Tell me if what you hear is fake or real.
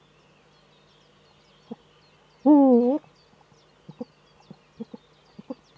real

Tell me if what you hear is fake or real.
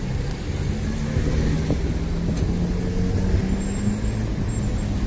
real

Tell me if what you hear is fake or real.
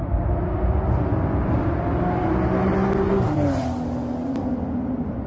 real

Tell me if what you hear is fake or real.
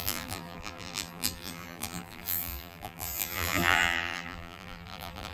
fake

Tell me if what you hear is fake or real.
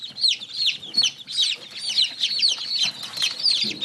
real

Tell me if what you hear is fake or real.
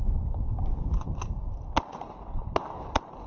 real